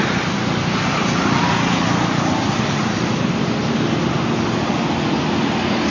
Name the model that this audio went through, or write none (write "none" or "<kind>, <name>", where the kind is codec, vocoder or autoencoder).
none